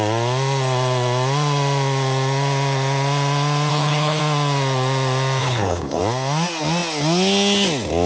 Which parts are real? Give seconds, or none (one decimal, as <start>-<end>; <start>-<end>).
0.0-3.7; 4.2-5.4; 6.0-8.1